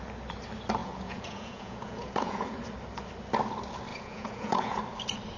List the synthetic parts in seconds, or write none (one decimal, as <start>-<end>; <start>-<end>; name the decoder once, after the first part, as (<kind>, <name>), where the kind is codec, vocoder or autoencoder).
0.8-2.6 (vocoder, Vocos); 3.9-4.8